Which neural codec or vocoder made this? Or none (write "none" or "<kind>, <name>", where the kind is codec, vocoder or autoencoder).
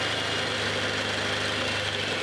none